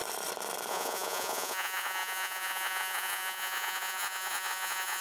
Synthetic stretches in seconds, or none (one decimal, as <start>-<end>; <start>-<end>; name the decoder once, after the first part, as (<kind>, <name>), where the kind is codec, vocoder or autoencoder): 0.7-5.0 (vocoder, Vocos)